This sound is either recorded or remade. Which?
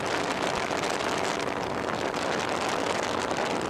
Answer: recorded